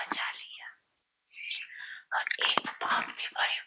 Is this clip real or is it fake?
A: real